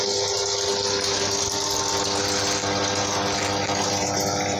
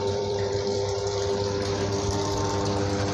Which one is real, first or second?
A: first